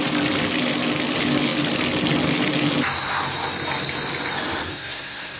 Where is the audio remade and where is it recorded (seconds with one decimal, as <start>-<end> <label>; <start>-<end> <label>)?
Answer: 0.0-4.7 recorded; 4.7-5.4 remade